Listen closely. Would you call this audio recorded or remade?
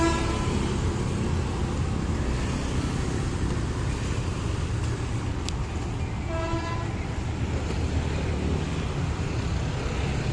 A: recorded